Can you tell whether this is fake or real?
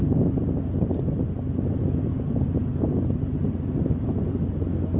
real